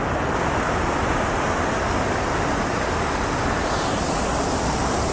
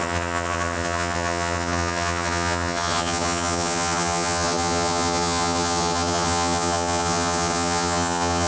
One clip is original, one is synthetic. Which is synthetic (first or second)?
second